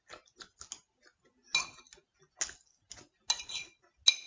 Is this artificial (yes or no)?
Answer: no